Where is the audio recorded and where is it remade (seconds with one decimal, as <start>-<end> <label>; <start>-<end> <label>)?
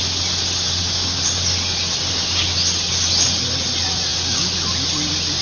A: 0.0-5.4 recorded